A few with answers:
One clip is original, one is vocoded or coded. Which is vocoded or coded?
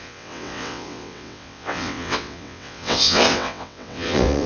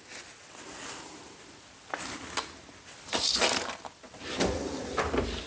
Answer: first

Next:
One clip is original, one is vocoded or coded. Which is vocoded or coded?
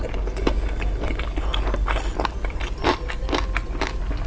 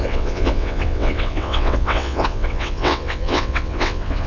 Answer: second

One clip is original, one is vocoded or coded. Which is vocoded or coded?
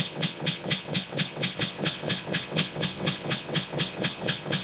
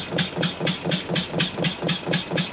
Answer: first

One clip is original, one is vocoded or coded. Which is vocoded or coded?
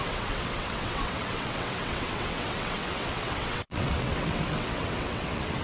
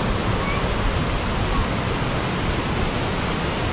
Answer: first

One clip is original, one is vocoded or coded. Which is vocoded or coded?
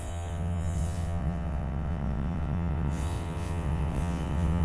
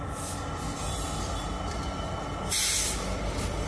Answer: first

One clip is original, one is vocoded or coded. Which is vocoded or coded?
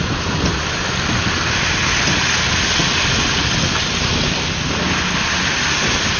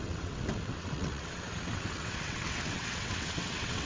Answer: second